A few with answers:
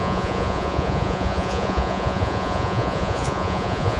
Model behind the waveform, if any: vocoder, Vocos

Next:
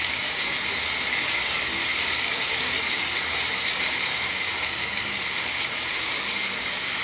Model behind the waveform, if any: codec, DAC